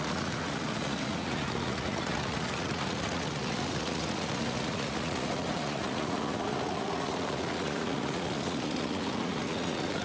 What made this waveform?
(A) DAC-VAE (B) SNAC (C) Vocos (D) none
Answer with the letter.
C